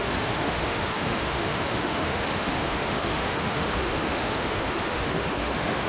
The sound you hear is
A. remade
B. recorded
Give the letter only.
A